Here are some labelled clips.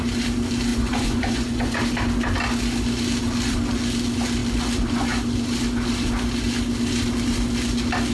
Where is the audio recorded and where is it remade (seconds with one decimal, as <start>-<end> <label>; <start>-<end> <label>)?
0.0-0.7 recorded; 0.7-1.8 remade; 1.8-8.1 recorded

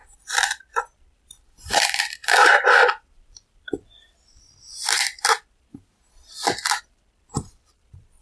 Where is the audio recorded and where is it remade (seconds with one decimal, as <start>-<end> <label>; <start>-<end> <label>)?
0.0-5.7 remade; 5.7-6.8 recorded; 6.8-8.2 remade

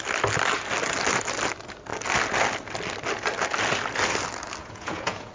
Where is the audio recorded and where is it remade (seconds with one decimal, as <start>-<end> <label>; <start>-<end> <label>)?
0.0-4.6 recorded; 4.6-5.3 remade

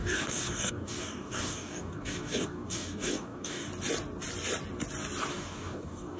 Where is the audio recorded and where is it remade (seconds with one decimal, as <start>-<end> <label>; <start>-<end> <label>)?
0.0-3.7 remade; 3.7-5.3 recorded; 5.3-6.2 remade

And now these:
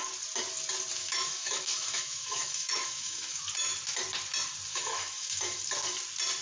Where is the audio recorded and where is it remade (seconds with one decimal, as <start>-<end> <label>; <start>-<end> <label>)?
0.0-1.0 recorded; 1.0-3.4 remade; 3.4-4.7 recorded; 4.7-5.6 remade; 5.6-6.4 recorded